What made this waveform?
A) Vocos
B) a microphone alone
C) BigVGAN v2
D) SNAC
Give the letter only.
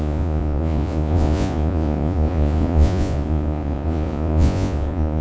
A